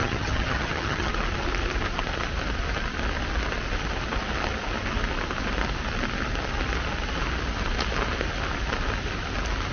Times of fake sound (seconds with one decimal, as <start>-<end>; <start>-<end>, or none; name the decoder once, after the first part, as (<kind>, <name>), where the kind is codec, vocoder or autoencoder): 0.0-1.1 (vocoder, HiFi-GAN)